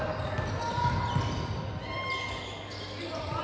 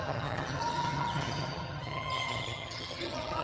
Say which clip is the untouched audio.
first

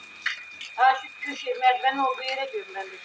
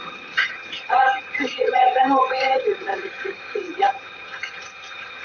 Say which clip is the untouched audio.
first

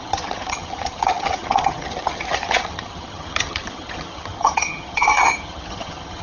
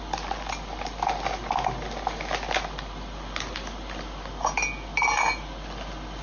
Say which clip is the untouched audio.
second